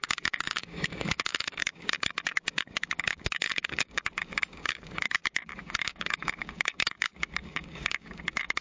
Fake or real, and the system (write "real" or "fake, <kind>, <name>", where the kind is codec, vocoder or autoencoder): fake, codec, DAC